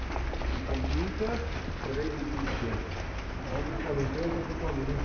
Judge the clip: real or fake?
real